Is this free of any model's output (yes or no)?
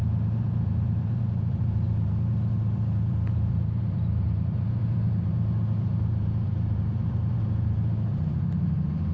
no